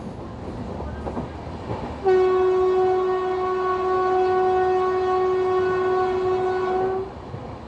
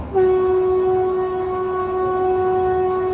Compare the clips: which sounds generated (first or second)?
second